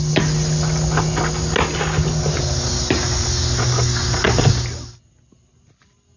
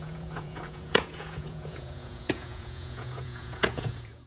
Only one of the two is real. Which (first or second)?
first